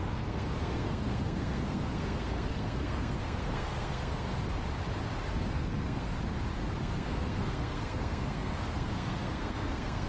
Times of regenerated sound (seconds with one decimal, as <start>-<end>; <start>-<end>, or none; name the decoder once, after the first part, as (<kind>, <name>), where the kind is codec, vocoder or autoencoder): 0.0-4.3 (codec, SNAC); 5.3-6.1; 6.8-10.1